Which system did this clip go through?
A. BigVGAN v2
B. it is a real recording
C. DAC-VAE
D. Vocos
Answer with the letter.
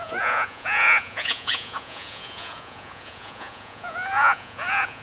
D